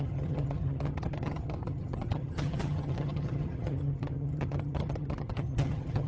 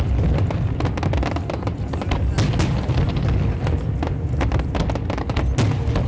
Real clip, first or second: second